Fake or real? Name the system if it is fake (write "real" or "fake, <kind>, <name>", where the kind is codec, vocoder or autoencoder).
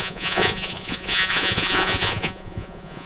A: fake, vocoder, Vocos